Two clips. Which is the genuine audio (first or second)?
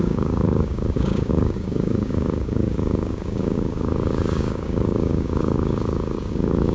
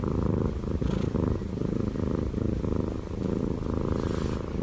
second